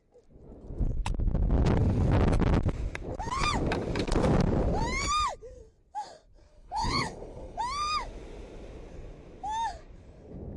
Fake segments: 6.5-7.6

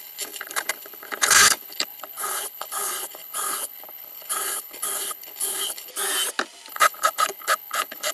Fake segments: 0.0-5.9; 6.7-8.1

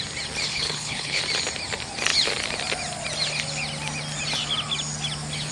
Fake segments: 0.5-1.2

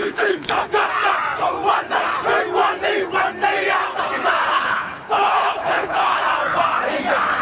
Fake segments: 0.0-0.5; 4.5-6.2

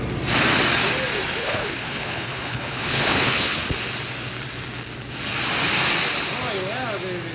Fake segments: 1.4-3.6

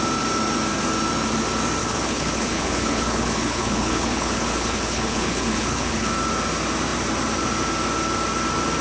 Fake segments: 1.8-6.1